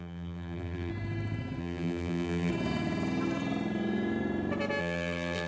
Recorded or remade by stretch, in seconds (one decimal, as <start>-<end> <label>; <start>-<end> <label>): 0.0-0.9 remade; 0.9-1.6 recorded; 1.6-2.5 remade; 2.5-4.8 recorded; 4.8-5.5 remade